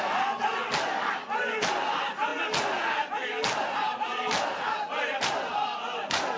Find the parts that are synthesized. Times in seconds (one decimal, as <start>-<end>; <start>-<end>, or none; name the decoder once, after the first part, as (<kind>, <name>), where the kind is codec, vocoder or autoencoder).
none